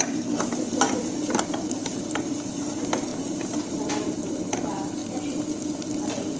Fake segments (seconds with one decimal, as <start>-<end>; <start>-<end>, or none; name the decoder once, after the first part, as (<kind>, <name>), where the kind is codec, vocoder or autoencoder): 0.0-5.0 (vocoder, BigVGAN v2)